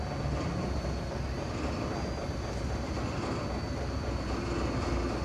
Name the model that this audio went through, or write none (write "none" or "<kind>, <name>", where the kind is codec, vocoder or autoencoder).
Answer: none